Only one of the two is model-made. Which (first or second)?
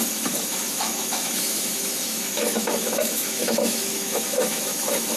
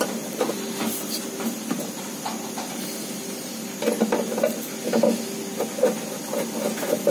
first